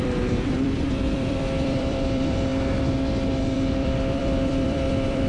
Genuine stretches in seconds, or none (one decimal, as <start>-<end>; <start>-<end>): 2.5-3.4